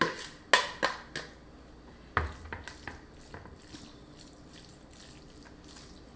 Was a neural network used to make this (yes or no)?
no